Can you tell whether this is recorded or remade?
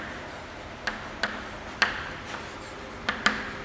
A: recorded